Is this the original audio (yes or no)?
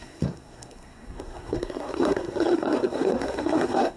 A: no